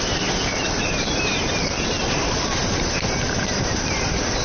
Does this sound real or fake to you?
real